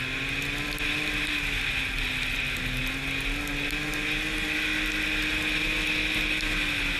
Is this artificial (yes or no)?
no